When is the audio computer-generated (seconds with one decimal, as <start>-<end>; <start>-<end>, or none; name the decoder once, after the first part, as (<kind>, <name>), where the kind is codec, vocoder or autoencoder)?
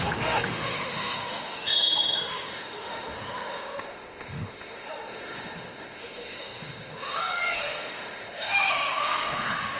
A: 0.0-9.8 (autoencoder, DAC-VAE)